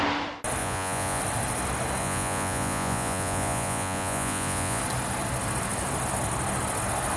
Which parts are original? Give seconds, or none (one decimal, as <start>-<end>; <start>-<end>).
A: 0.0-0.6; 1.2-2.0; 4.8-7.2

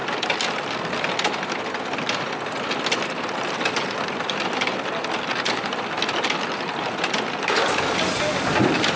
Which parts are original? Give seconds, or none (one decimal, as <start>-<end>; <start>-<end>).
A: 0.0-9.0

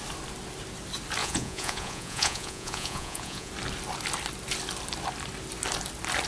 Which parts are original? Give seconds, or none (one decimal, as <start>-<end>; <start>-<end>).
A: 0.0-1.2; 3.5-6.3

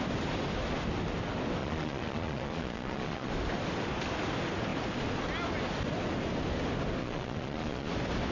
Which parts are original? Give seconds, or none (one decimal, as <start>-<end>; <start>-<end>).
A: 0.0-1.6; 3.3-7.0; 7.9-8.3

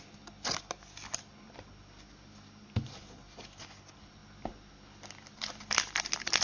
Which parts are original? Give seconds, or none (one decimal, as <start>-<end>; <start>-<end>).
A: 0.0-6.4